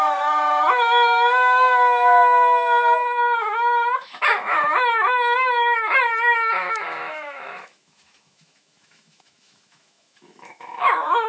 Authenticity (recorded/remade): remade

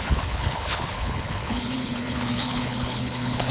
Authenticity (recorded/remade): remade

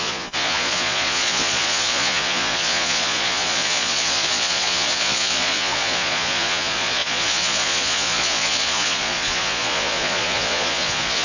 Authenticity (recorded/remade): remade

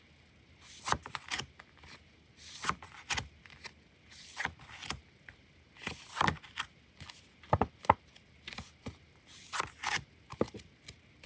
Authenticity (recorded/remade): recorded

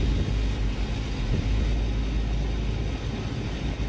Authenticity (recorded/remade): recorded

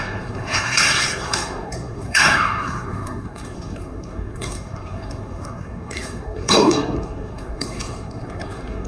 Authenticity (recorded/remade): remade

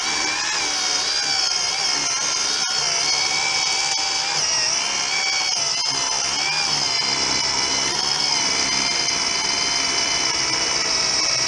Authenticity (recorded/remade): recorded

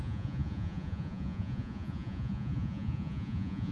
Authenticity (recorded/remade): remade